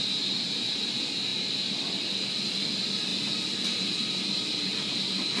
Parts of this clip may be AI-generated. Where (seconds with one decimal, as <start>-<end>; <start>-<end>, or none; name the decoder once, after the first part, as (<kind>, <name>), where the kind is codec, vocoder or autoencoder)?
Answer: none